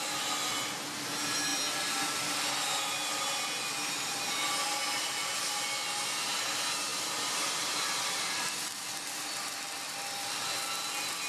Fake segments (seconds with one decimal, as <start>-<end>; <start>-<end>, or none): 6.9-10.6